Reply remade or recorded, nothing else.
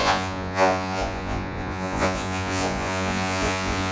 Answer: remade